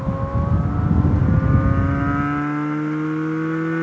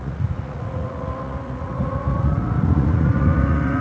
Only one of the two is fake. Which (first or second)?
second